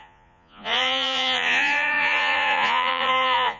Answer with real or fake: fake